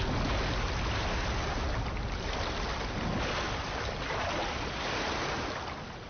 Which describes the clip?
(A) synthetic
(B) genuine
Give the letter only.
B